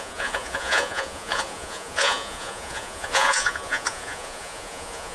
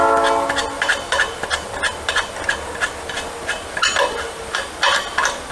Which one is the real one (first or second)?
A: second